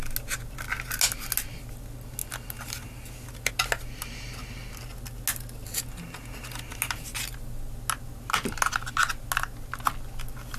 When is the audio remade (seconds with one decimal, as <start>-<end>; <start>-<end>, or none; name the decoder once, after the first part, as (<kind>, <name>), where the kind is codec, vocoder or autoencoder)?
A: none